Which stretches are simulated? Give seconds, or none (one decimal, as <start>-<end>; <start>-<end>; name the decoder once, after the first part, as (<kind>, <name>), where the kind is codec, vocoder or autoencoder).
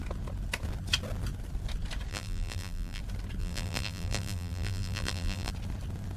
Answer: 2.1-3.0 (vocoder, BigVGAN v2); 3.4-5.5